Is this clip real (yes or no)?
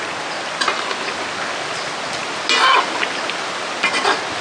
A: yes